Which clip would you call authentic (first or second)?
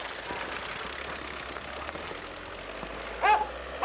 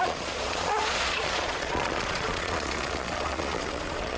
first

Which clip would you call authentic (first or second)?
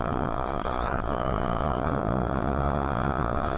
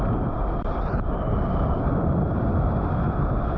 second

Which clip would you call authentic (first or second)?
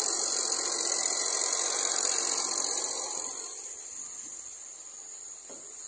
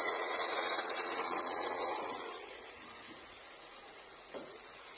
first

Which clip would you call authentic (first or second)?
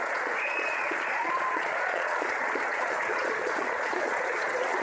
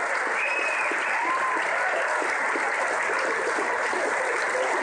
second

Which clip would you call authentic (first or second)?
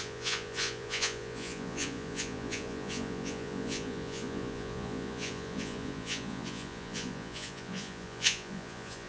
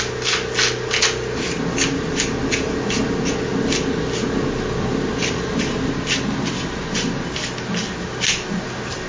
second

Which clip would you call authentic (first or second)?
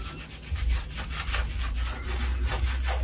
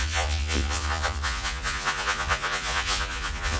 first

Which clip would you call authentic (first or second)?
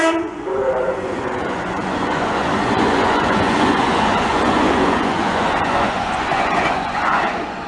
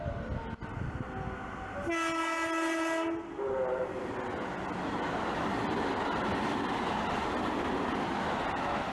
second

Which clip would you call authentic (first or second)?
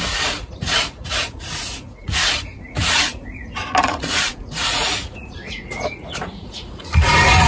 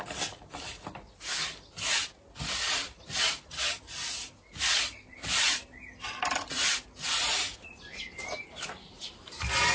second